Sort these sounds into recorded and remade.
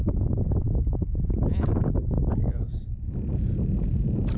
recorded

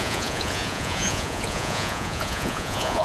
remade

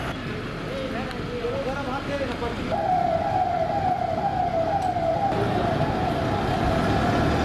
recorded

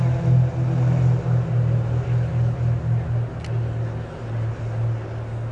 recorded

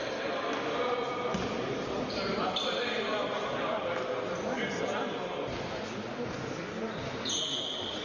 recorded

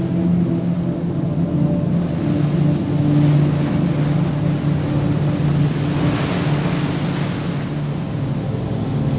recorded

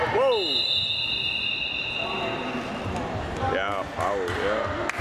recorded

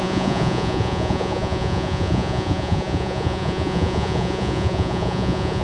remade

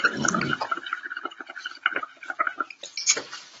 recorded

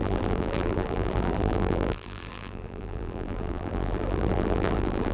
remade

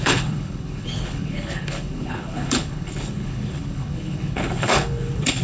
remade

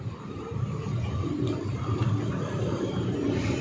remade